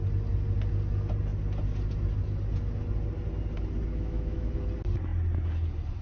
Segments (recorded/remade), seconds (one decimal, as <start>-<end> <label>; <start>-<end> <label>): 0.0-3.9 recorded; 3.9-4.5 remade; 4.5-6.0 recorded